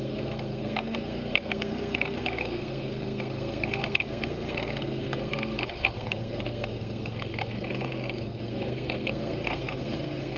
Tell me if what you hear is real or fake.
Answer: fake